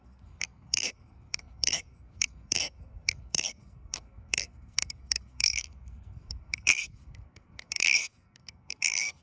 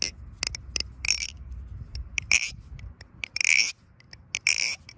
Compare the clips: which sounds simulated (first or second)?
first